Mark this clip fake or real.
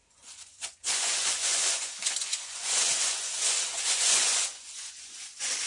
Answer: fake